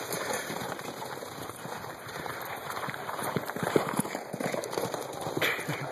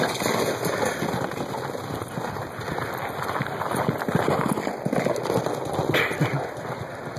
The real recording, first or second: second